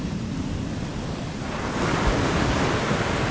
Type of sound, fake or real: real